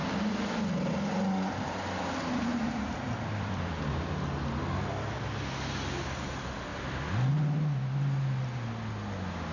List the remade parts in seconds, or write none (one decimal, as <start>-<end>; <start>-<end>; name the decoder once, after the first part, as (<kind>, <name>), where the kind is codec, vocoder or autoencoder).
2.5-5.1 (vocoder, BigVGAN v2); 6.7-7.3